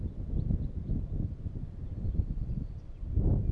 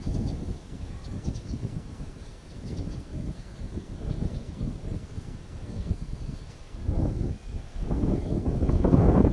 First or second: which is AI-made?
second